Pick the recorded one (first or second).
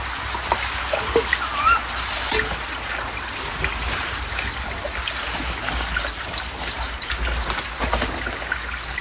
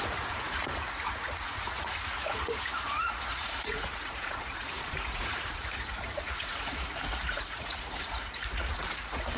first